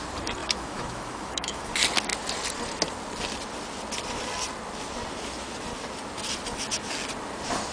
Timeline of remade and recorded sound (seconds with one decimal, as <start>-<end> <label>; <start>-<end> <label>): 0.0-0.4 recorded; 0.4-1.7 remade; 1.7-7.7 recorded